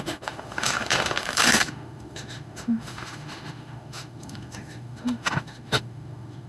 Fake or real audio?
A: fake